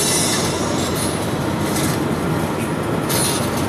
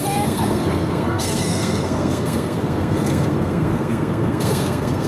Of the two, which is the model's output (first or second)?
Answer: second